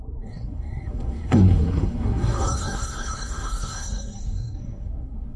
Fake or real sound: fake